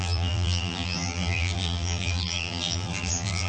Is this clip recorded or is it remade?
remade